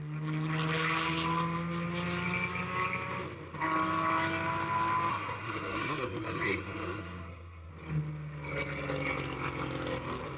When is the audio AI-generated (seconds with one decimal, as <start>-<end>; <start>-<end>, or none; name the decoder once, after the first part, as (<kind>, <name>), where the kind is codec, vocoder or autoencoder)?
5.1-7.7 (codec, SNAC)